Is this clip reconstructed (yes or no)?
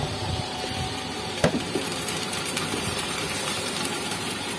yes